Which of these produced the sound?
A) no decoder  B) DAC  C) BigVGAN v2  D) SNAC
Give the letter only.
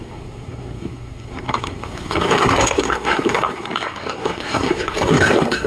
D